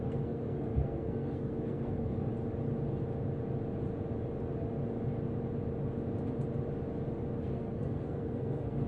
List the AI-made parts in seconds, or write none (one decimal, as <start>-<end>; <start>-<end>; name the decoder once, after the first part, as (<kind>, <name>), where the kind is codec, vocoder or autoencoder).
0.0-2.3 (codec, SNAC); 7.4-8.9